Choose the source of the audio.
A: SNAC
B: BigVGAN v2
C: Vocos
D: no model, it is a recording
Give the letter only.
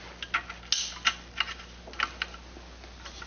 D